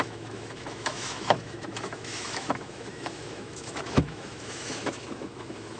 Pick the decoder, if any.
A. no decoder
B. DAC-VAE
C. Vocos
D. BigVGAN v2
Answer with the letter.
B